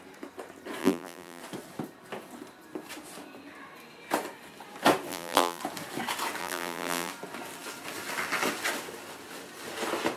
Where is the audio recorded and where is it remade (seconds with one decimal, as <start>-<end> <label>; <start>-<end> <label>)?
0.0-0.8 recorded; 0.8-1.4 remade; 1.4-5.1 recorded; 5.1-5.6 remade; 5.6-6.4 recorded; 6.4-7.1 remade; 7.1-10.2 recorded